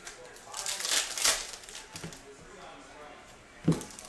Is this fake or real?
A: real